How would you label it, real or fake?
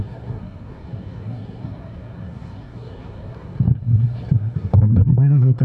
fake